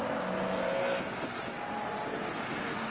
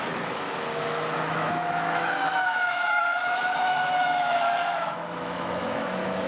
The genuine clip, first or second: first